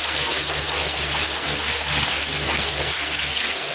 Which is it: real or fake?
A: fake